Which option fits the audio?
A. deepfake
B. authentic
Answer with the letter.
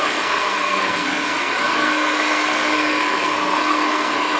A